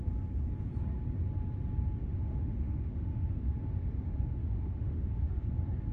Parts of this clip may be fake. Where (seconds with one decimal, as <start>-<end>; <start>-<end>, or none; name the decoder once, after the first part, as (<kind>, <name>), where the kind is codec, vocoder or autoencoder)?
2.0-5.5 (autoencoder, DAC-VAE)